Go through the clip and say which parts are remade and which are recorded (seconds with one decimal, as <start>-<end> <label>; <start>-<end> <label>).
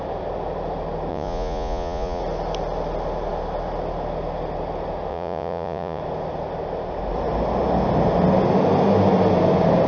0.0-1.1 recorded; 1.1-2.2 remade; 2.2-5.1 recorded; 5.1-6.0 remade; 6.0-9.9 recorded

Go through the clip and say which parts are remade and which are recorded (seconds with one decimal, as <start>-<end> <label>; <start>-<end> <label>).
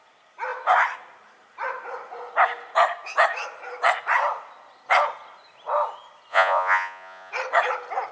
0.0-6.3 recorded; 6.3-7.3 remade; 7.3-8.1 recorded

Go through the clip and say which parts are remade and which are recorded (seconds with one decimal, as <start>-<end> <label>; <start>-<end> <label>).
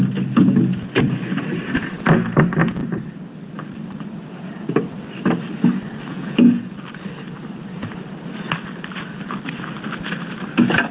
0.0-6.1 recorded; 6.1-6.6 remade; 6.6-10.9 recorded